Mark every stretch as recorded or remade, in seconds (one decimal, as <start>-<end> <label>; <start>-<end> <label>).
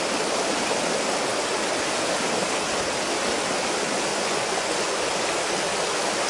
0.0-4.1 recorded; 4.1-5.1 remade; 5.1-6.3 recorded